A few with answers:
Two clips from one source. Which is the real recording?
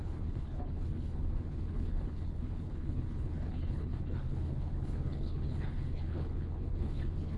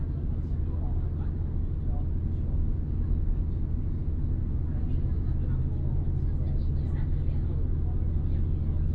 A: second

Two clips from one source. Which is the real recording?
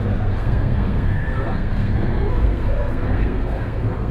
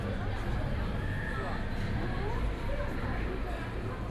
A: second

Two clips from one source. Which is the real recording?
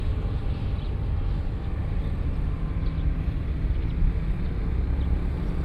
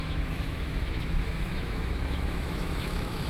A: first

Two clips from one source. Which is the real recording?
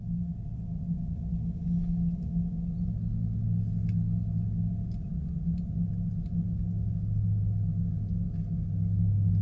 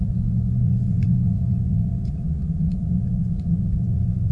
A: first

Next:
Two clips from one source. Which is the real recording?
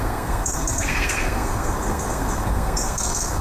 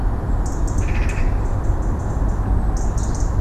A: second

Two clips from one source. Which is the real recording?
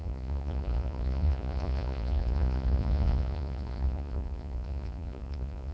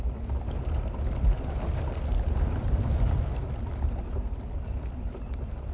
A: second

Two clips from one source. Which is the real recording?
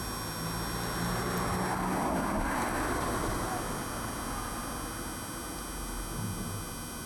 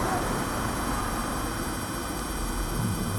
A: first